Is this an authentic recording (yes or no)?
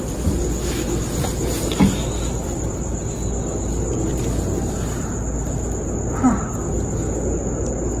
yes